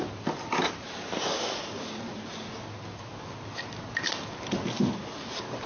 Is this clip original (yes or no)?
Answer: yes